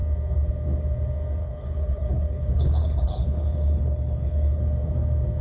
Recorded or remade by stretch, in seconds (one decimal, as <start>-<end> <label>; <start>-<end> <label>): 0.0-1.4 recorded; 1.4-4.6 remade; 4.6-5.4 recorded